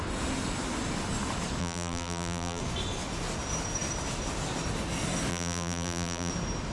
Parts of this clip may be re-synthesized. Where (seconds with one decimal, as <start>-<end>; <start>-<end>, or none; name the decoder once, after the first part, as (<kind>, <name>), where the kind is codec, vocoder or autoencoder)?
1.6-2.6 (vocoder, BigVGAN v2); 5.3-6.3